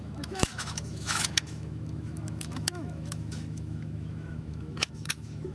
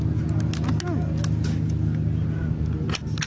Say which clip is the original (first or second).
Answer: second